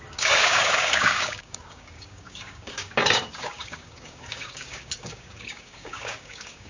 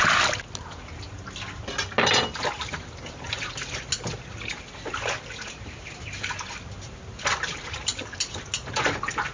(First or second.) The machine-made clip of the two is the first